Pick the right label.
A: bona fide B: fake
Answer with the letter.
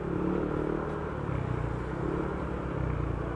A